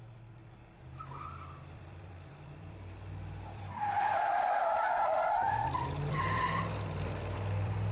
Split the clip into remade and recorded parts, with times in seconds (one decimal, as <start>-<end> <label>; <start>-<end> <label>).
0.0-0.4 remade; 0.4-1.6 recorded; 1.6-7.9 remade